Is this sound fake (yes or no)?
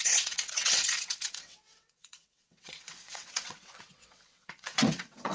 yes